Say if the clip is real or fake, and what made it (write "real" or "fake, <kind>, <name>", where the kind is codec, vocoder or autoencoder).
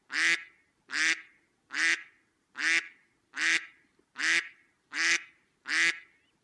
real